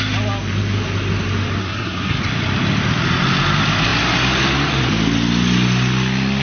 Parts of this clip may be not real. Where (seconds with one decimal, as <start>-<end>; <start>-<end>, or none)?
1.6-2.2